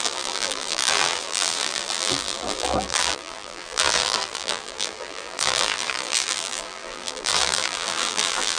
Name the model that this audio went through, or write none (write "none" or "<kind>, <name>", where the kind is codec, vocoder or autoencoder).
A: vocoder, BigVGAN v2